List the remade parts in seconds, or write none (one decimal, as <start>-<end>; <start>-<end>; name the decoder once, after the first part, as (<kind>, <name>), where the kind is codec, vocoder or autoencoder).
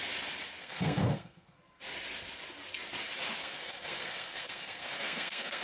0.6-1.8 (codec, SNAC); 3.4-5.6